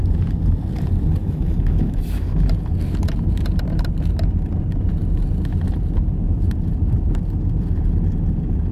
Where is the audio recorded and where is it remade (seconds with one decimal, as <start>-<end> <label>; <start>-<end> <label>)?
0.0-1.2 recorded; 1.2-2.0 remade; 2.0-8.7 recorded